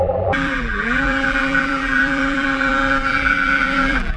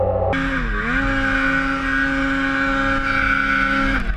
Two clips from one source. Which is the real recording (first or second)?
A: second